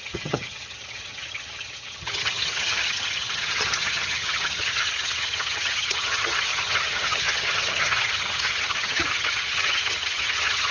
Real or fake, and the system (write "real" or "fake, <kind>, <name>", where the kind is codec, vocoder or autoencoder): fake, vocoder, HiFi-GAN